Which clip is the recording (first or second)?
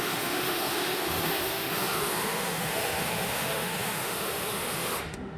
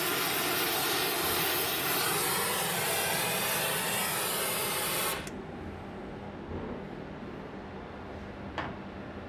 second